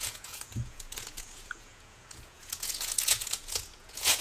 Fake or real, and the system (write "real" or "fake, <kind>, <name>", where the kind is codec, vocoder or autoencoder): fake, vocoder, Vocos